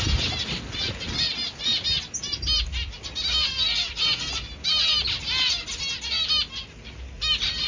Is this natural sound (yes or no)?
yes